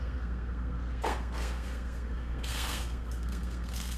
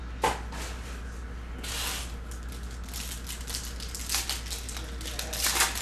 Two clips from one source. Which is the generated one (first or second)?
first